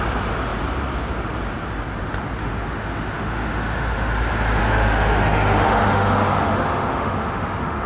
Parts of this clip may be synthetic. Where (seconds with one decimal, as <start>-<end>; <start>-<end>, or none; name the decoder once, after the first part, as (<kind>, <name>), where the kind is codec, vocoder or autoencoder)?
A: 2.4-4.1 (autoencoder, DAC-VAE); 4.6-7.9